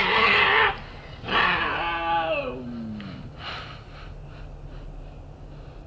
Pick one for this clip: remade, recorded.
recorded